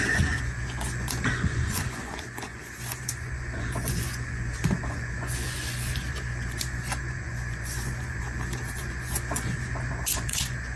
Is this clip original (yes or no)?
no